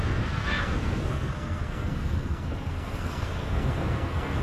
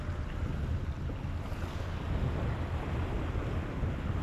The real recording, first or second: second